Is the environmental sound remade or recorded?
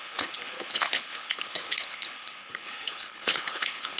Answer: remade